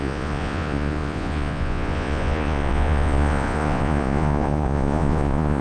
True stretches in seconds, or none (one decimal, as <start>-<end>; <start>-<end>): none